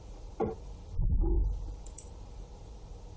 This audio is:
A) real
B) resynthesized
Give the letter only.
B